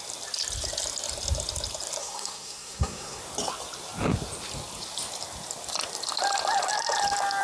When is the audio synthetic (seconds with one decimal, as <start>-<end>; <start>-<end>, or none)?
2.0-3.2